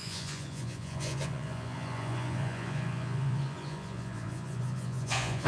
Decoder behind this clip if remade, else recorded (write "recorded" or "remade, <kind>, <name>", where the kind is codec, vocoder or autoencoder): remade, vocoder, Vocos